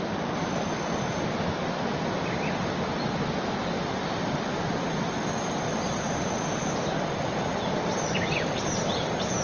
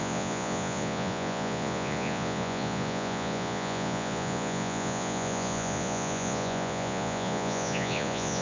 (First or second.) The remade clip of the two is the second